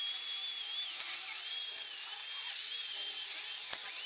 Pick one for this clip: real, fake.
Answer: real